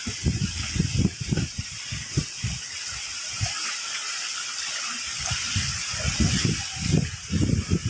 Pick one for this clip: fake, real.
real